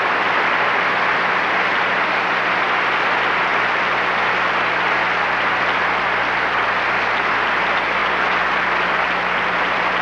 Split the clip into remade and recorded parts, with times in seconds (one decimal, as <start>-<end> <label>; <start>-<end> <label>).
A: 0.0-10.0 recorded